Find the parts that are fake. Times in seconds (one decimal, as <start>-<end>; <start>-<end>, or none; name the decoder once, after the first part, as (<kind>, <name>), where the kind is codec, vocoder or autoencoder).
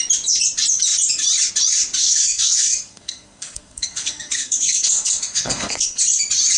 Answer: 2.0-6.0 (codec, SNAC)